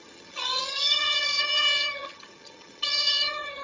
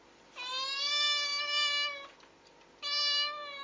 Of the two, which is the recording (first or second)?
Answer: second